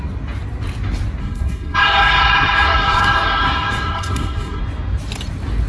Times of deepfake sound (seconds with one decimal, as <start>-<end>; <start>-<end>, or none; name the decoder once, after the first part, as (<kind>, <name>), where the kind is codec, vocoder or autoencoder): 1.2-4.6 (codec, SNAC)